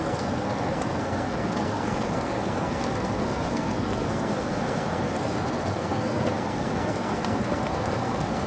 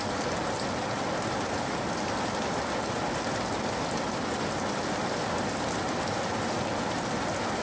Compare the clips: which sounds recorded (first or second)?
second